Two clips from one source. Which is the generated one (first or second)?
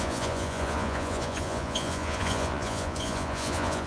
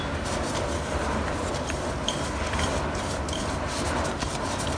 first